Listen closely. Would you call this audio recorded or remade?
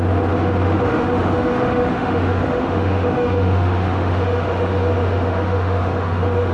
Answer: remade